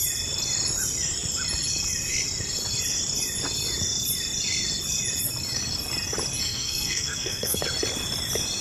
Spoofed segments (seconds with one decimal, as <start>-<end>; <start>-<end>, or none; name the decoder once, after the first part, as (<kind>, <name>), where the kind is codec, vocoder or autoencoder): 6.4-7.6 (codec, SNAC)